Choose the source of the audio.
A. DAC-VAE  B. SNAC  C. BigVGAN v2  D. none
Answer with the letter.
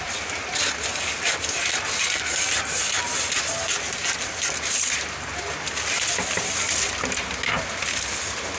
D